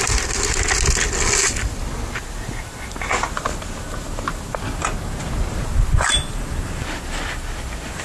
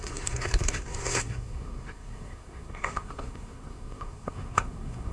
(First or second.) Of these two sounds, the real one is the first